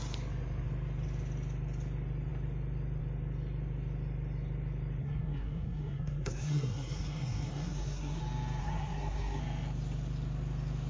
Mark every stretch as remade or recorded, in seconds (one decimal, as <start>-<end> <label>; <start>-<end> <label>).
0.0-5.0 recorded; 5.0-8.2 remade; 8.2-8.6 recorded; 8.6-9.4 remade; 9.4-10.9 recorded